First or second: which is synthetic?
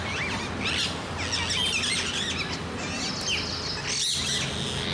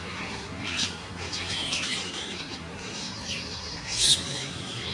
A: second